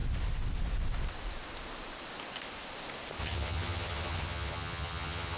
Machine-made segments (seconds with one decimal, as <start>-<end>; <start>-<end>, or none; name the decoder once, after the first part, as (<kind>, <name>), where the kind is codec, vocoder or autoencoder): 3.2-5.4 (vocoder, HiFi-GAN)